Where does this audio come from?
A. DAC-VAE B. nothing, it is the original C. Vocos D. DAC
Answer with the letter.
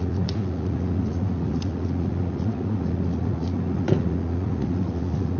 C